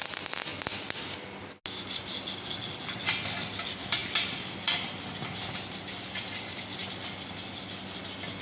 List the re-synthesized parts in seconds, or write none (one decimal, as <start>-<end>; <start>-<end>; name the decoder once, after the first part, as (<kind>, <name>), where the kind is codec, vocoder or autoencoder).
none